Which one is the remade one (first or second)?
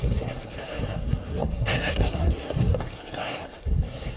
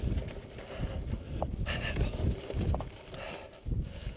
first